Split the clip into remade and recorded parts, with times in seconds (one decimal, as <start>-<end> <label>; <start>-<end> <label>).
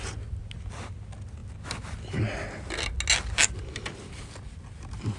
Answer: 0.0-5.2 recorded